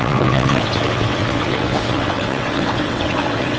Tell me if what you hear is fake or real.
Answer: fake